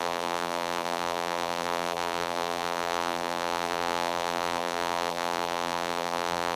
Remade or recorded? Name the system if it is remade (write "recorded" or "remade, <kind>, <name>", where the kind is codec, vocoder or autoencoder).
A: remade, vocoder, BigVGAN v2